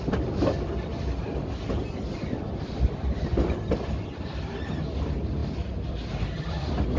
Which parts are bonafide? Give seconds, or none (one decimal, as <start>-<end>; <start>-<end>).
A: 0.0-7.0

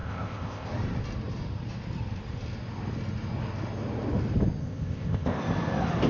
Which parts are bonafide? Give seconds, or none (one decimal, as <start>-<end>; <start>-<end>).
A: 0.7-4.6; 5.4-6.1